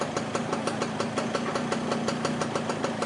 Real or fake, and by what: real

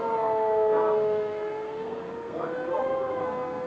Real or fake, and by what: fake, codec, SNAC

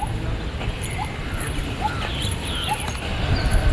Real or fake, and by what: real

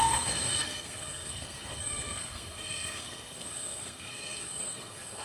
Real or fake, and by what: fake, codec, SNAC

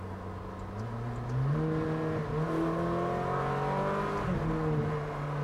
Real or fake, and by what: real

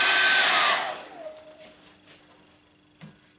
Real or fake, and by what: real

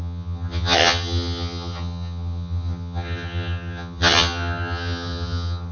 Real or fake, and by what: fake, vocoder, HiFi-GAN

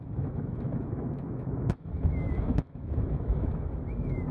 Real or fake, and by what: fake, autoencoder, DAC-VAE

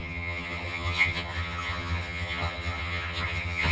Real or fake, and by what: fake, vocoder, HiFi-GAN